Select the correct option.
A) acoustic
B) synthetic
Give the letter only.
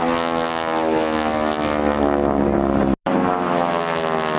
A